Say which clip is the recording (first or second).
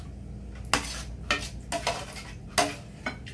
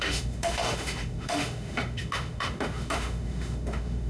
first